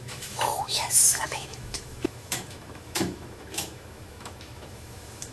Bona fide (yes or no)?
no